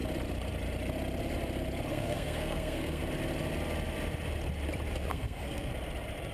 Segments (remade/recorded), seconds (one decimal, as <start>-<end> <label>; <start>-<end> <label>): 0.0-1.9 recorded; 1.9-3.0 remade; 3.0-5.1 recorded; 5.1-5.7 remade; 5.7-6.3 recorded